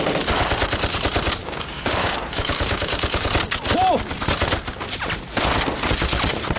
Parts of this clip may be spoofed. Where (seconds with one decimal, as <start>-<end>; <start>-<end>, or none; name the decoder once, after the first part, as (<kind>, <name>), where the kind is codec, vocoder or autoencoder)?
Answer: 1.4-3.3 (codec, DAC)